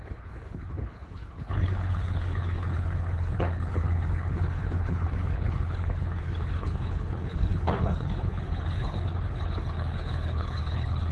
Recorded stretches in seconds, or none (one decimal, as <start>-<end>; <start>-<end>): none